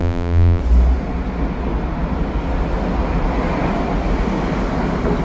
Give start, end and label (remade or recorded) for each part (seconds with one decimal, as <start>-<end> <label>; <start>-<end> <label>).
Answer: 0.0-0.6 remade; 0.6-5.2 recorded